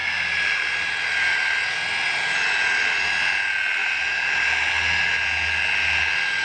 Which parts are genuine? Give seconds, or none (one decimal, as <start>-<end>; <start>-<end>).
0.7-3.8; 4.7-6.4